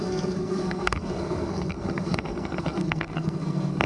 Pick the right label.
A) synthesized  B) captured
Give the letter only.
A